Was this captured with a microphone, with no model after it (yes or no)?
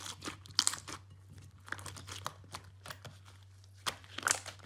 yes